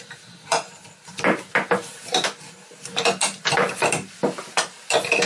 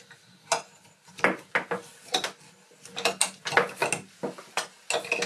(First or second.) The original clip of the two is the second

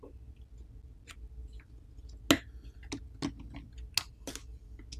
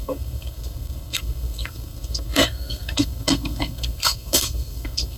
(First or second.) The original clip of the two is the first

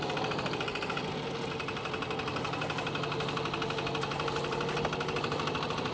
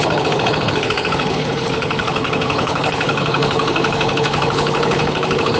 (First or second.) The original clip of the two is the first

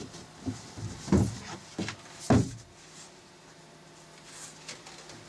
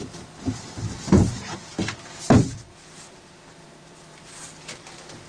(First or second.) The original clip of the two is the first